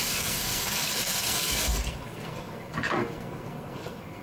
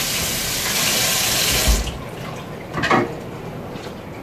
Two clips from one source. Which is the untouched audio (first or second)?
second